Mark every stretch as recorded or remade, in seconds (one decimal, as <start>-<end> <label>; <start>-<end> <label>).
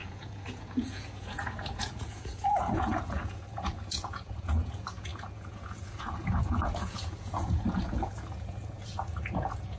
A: 0.0-9.8 remade